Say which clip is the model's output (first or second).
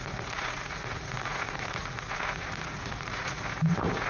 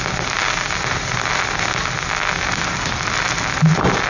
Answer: first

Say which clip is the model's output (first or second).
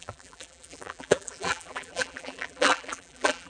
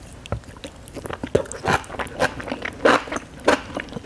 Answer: first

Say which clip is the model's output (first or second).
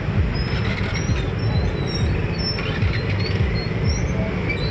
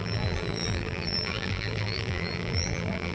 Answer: second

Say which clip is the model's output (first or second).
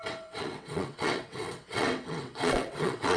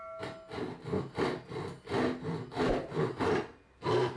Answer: first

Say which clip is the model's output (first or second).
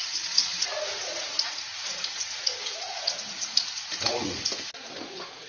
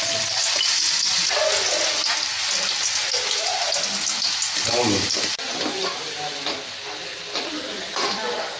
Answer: first